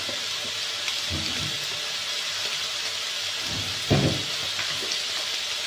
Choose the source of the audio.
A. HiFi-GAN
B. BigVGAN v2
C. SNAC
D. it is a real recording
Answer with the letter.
D